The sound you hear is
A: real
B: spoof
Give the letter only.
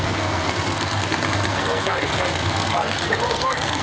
B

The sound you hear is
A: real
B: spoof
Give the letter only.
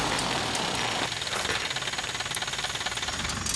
A